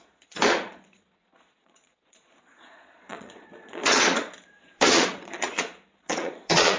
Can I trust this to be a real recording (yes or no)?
no